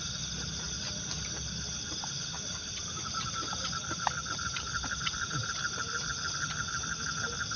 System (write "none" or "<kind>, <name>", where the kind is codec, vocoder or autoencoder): none